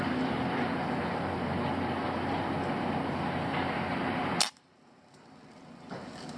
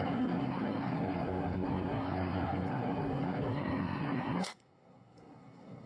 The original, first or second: first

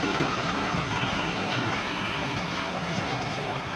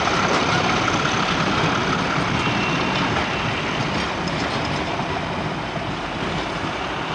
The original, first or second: second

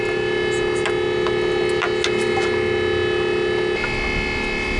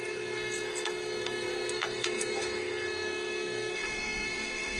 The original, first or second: first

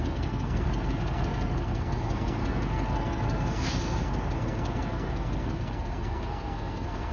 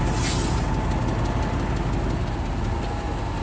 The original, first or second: second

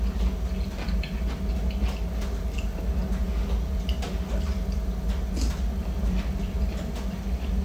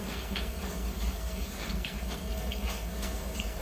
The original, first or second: first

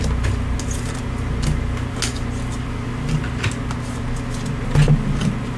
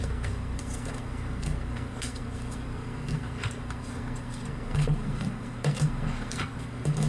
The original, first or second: first